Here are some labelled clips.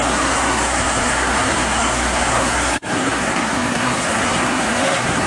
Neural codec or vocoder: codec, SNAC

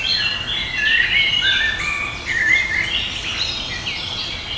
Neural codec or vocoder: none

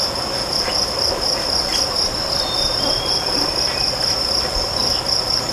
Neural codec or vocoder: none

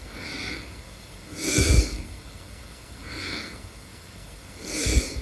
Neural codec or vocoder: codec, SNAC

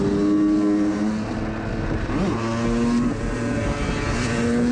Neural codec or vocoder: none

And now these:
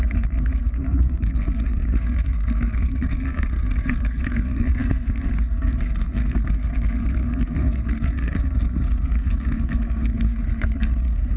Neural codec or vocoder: codec, SNAC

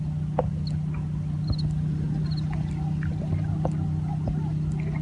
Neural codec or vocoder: none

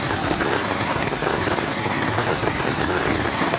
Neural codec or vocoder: codec, SNAC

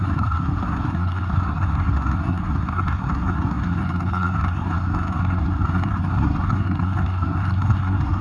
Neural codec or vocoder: codec, SNAC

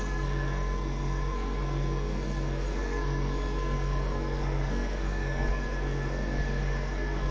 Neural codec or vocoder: codec, SNAC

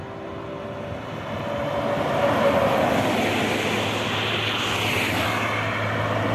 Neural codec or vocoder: none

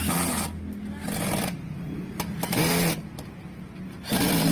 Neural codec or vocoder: none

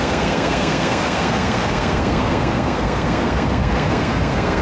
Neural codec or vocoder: codec, SNAC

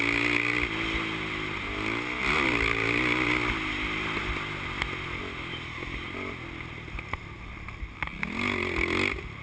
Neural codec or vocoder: none